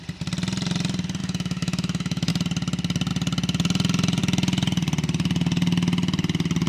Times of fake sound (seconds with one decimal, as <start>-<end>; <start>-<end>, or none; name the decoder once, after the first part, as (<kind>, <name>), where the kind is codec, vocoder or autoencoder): 1.2-2.3 (autoencoder, DAC-VAE)